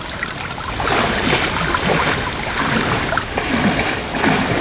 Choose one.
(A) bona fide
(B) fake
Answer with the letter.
A